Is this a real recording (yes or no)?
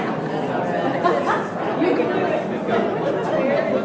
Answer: yes